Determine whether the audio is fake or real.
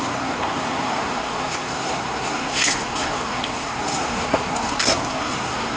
fake